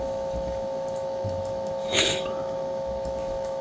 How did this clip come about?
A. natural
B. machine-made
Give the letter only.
B